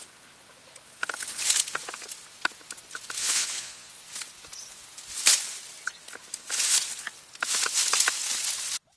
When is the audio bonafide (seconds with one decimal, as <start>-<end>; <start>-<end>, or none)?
0.0-3.2; 3.9-9.0